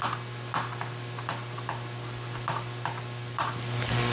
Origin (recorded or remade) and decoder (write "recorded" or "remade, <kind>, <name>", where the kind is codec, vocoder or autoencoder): recorded